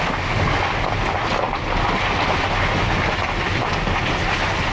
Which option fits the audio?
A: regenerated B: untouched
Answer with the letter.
B